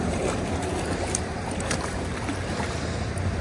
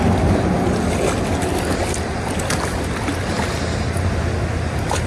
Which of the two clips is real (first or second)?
second